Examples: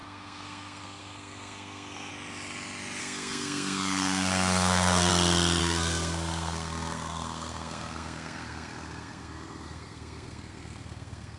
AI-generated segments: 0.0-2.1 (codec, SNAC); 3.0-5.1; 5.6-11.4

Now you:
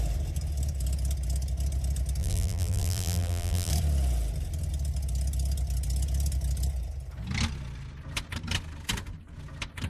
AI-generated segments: 2.2-3.7 (vocoder, BigVGAN v2)

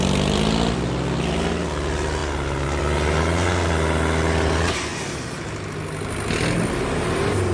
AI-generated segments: none

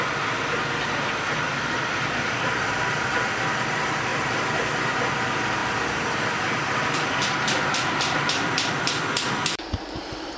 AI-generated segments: 4.1-4.8 (vocoder, BigVGAN v2); 5.6-9.9

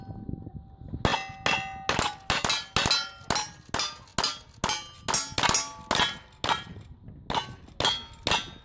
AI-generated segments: none

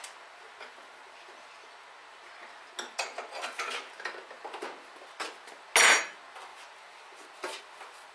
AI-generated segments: none

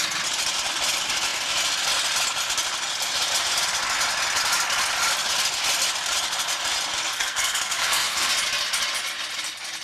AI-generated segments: 7.1-8.3 (codec, SNAC)

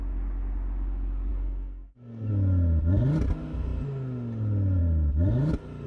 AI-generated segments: 1.3-2.3 (codec, SNAC)